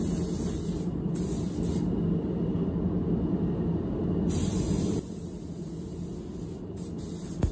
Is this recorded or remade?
recorded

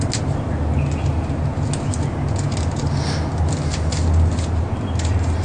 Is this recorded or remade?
recorded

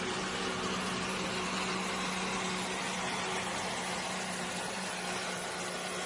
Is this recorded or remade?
recorded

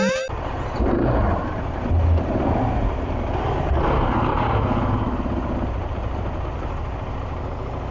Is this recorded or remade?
recorded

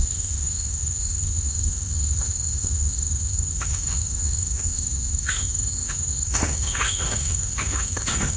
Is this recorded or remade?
remade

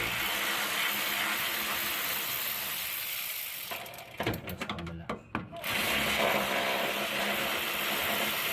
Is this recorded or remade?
recorded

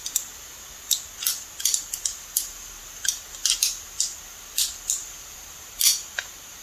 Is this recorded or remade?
recorded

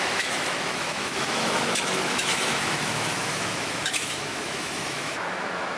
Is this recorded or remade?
remade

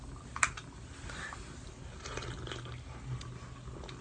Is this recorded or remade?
recorded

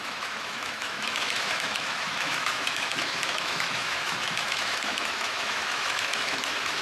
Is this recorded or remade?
remade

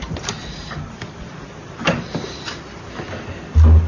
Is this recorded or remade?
recorded